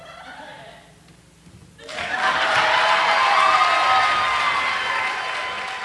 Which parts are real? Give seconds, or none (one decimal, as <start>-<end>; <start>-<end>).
0.0-5.8